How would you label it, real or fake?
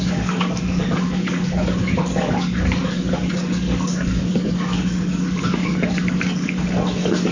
fake